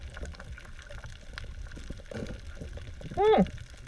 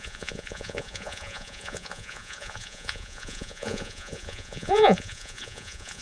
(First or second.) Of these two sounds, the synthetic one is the second